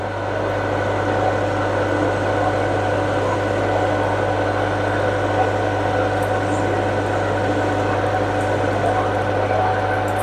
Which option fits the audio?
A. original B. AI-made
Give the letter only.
A